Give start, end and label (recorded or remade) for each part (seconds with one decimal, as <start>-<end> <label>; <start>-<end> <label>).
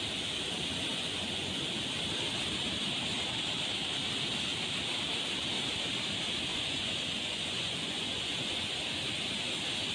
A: 0.0-0.9 recorded; 0.9-1.6 remade; 1.6-6.5 recorded; 6.5-8.8 remade; 8.8-9.9 recorded